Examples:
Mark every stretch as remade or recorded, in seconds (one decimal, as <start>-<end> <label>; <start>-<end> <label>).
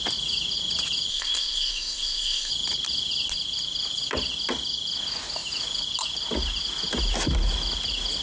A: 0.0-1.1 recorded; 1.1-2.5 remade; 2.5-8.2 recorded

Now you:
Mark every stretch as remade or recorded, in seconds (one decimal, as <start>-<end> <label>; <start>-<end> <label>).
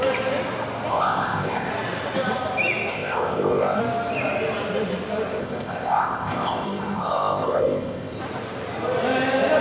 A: 0.0-0.9 recorded; 0.9-1.7 remade; 1.7-2.9 recorded; 2.9-3.8 remade; 3.8-5.4 recorded; 5.4-8.2 remade; 8.2-9.6 recorded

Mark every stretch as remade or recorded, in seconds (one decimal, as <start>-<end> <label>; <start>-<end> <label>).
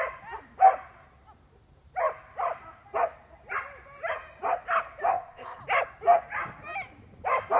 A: 0.0-5.1 recorded; 5.1-5.6 remade; 5.6-7.6 recorded